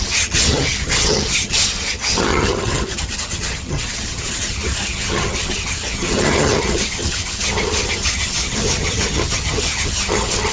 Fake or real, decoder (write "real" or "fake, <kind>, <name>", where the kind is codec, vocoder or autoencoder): fake, vocoder, HiFi-GAN